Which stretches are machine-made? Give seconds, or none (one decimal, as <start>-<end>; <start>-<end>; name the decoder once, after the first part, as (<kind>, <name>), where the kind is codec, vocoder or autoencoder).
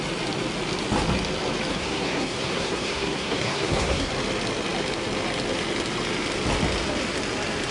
1.7-4.1 (codec, SNAC)